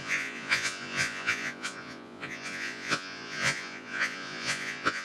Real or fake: fake